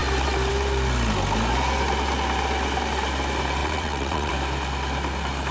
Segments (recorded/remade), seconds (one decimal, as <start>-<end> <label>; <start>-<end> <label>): 0.0-3.6 recorded; 3.6-4.3 remade; 4.3-5.5 recorded